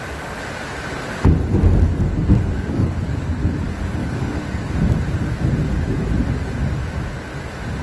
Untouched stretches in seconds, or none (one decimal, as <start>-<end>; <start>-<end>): 0.0-1.9; 3.3-4.0; 4.7-7.8